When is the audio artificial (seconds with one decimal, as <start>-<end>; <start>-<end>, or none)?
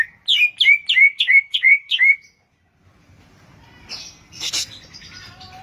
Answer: 1.0-2.0; 4.0-4.5